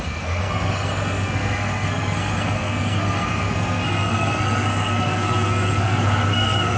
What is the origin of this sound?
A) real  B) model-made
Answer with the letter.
B